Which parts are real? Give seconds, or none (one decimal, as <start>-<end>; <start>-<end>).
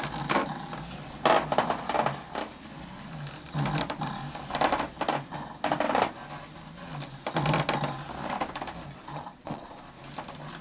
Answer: 0.0-9.1; 9.8-10.6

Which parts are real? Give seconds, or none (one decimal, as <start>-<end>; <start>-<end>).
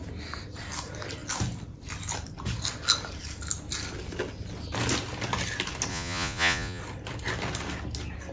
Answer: 0.0-5.9; 6.8-8.3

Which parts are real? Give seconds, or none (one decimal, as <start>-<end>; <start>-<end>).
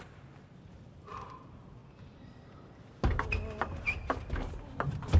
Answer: 0.0-5.2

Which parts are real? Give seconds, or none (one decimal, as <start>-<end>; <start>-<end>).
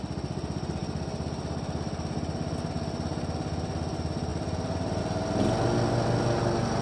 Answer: 0.0-6.8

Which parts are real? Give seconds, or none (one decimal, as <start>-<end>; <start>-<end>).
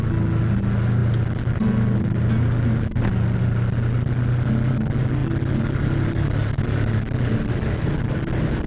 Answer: 0.0-8.7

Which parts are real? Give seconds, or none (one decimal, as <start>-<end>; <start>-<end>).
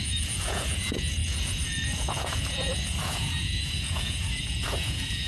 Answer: none